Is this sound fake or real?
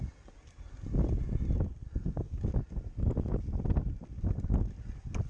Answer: real